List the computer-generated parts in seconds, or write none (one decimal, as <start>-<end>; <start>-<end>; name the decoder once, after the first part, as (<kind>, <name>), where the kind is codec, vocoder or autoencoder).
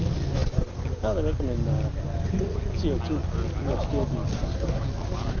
4.3-4.8 (codec, SNAC)